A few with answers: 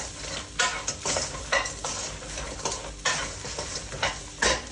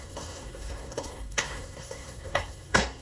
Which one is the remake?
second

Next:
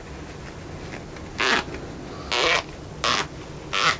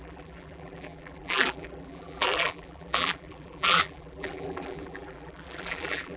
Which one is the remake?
second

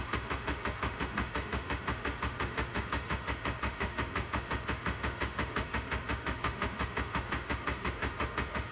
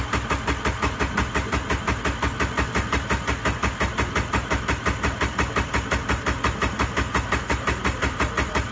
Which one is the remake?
first